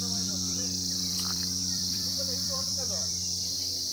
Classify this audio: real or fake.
fake